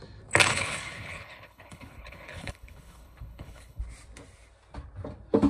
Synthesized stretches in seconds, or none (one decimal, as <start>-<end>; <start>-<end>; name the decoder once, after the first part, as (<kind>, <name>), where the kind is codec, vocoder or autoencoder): 0.5-3.8 (codec, HILCodec)